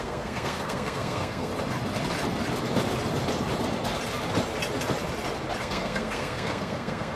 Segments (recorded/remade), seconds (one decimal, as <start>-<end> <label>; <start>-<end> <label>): 0.0-1.5 remade; 1.5-5.6 recorded; 5.6-7.2 remade